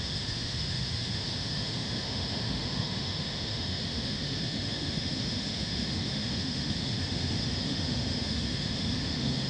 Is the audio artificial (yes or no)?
yes